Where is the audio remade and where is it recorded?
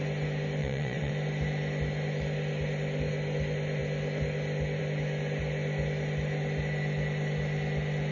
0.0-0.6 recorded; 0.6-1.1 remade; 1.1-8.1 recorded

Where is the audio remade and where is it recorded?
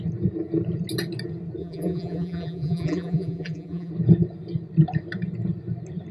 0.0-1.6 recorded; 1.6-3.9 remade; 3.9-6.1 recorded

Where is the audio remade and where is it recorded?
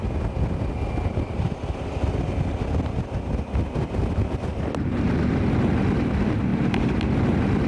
0.0-7.7 recorded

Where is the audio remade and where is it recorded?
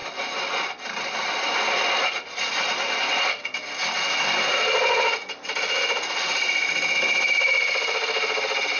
0.0-8.8 recorded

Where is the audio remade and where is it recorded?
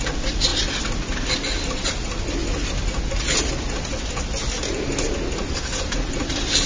0.0-6.7 recorded